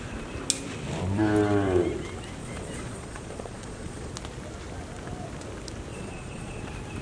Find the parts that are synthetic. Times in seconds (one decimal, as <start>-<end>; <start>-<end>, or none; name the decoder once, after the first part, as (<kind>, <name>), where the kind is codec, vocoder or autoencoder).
2.4-4.1 (vocoder, Vocos); 5.9-6.6